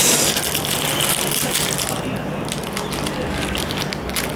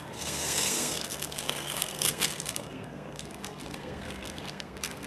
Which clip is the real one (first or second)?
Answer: first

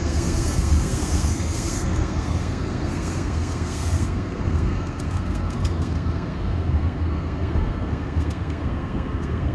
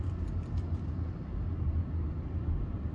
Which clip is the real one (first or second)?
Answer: second